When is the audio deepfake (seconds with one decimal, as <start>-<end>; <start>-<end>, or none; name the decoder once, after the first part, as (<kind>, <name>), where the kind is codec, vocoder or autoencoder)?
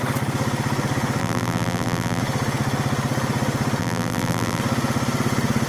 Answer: 1.2-2.2 (vocoder, BigVGAN v2); 3.8-4.6